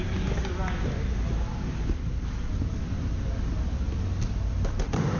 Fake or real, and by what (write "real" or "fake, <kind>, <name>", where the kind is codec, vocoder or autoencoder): real